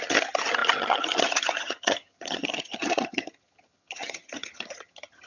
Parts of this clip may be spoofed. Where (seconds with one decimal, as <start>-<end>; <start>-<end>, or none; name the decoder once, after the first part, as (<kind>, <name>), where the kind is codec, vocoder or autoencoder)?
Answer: 0.0-5.3 (vocoder, HiFi-GAN)